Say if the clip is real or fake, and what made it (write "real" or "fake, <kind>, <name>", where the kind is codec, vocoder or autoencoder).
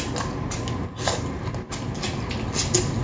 real